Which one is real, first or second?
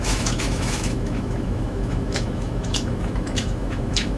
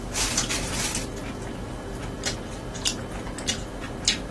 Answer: second